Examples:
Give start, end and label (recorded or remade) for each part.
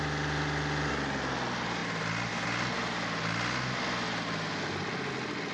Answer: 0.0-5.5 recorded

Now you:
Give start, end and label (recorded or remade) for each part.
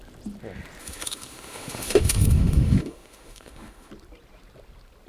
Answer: 0.0-0.8 recorded; 0.8-3.9 remade; 3.9-5.1 recorded